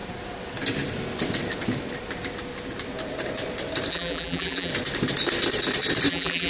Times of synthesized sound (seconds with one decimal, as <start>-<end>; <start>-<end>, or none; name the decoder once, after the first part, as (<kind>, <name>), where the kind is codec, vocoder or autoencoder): 3.9-4.7 (vocoder, BigVGAN v2); 6.1-6.5